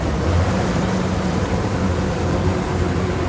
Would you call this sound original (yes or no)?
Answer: no